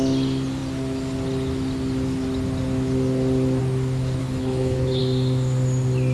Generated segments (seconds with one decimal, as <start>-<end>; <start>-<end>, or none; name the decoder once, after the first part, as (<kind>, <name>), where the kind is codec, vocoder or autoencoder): 4.2-5.0 (codec, HILCodec)

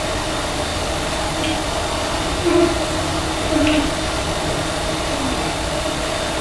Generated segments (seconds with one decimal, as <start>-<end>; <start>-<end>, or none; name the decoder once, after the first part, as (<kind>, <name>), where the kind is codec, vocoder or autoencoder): none

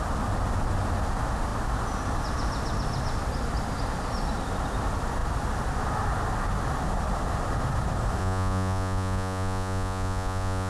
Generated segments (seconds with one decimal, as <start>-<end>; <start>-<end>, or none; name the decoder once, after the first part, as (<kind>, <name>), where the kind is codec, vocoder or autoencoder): 8.2-10.7 (vocoder, Vocos)

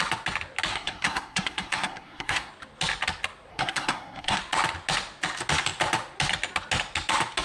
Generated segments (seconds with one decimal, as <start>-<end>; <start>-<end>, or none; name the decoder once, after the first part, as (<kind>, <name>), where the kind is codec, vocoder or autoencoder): 0.7-2.5 (codec, SNAC); 3.5-4.4

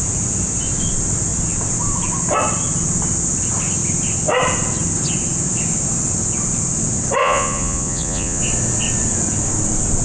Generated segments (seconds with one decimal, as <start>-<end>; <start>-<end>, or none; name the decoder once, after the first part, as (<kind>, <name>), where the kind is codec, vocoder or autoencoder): 7.2-8.4 (vocoder, Vocos)

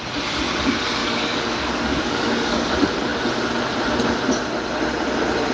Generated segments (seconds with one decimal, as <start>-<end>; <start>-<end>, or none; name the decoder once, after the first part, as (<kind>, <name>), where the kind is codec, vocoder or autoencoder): 1.0-2.7 (codec, DAC)

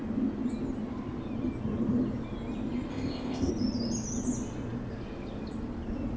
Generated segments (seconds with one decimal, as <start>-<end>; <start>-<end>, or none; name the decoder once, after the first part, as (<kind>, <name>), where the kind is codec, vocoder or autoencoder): 2.9-3.5 (codec, ZipCodec)

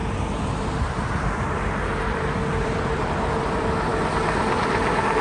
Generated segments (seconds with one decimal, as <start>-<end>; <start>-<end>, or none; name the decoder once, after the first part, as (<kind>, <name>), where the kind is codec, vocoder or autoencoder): 0.0-3.1 (vocoder, BigVGAN v2)